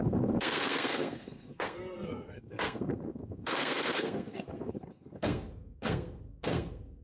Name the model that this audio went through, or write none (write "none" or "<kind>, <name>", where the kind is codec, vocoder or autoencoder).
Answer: codec, SNAC